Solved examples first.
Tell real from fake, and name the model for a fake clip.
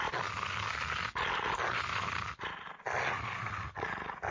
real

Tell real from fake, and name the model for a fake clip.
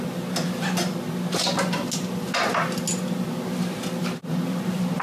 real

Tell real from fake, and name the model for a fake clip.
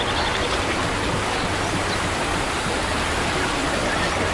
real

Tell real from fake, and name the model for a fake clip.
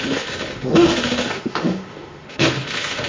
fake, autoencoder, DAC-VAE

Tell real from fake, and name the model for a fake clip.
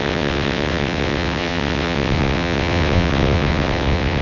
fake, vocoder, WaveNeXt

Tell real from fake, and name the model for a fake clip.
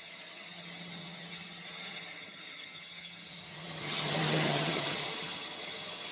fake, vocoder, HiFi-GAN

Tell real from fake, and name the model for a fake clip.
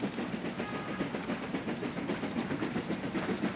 real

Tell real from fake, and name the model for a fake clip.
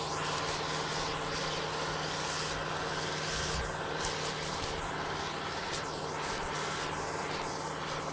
real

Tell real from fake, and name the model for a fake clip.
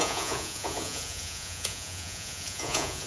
fake, vocoder, Vocos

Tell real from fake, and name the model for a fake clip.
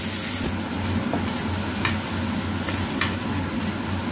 real